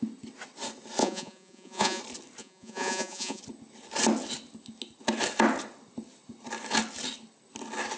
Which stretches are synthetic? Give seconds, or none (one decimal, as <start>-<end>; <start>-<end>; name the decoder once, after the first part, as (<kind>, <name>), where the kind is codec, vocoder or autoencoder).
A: 1.0-2.0 (vocoder, Vocos); 2.4-3.4